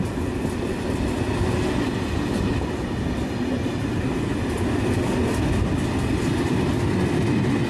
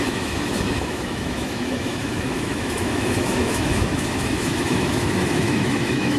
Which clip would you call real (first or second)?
first